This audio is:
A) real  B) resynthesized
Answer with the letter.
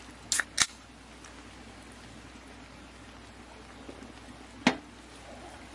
A